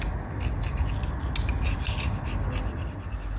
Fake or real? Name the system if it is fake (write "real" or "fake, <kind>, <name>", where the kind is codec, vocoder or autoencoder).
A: real